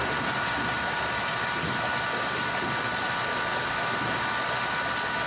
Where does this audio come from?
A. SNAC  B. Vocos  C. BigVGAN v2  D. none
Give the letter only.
D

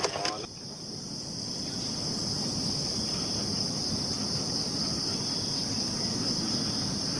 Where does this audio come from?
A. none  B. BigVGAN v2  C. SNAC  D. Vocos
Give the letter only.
A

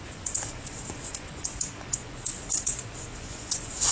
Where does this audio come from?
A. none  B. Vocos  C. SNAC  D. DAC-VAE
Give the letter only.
B